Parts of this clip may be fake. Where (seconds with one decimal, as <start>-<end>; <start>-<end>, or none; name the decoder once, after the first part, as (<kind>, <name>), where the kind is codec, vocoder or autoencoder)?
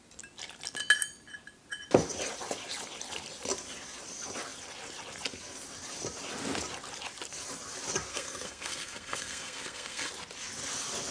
8.1-10.1 (codec, SNAC)